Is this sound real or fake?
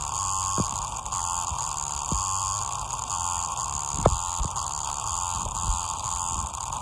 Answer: real